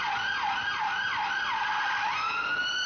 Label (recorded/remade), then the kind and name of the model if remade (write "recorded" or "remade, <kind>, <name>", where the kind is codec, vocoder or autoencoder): recorded